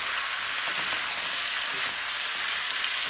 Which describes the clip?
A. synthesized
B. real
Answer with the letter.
B